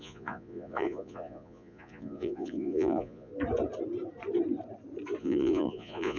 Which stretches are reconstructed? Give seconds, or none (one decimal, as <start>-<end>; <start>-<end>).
0.0-3.3; 5.2-6.2